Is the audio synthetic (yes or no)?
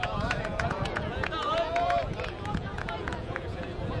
yes